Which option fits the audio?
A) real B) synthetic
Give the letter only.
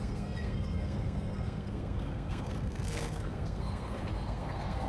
B